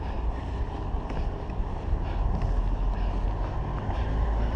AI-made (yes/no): no